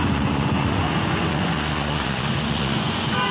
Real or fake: fake